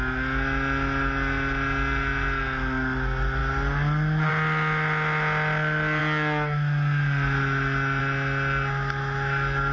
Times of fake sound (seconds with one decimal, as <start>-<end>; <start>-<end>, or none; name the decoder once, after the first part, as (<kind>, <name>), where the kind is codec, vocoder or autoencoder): none